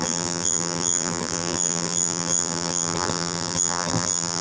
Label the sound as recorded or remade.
remade